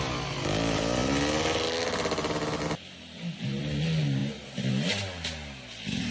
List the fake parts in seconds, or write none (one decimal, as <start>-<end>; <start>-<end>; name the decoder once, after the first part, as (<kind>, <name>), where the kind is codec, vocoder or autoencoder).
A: 4.2-4.7 (vocoder, BigVGAN v2)